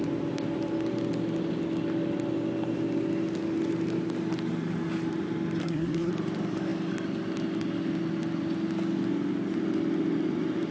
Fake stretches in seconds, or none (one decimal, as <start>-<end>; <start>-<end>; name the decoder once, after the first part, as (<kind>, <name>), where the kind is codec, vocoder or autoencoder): 5.6-6.1 (codec, SNAC)